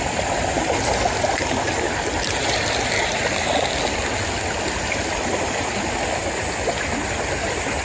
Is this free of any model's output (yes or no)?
yes